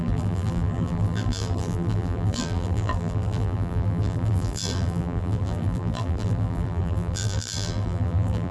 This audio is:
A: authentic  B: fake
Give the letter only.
B